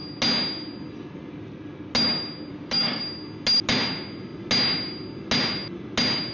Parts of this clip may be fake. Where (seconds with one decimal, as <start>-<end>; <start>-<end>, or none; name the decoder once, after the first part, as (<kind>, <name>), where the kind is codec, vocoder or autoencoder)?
2.5-3.0 (codec, DAC)